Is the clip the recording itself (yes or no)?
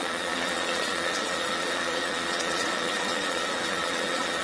no